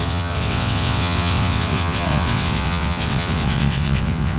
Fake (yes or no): yes